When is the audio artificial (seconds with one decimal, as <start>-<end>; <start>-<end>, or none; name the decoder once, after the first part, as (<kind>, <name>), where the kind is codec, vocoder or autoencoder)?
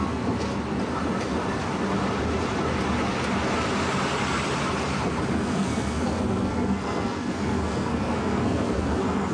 0.0-0.5 (codec, SNAC); 5.3-9.3